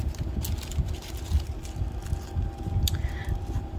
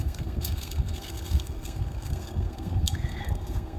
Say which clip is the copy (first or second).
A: second